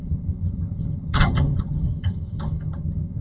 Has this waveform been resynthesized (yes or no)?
yes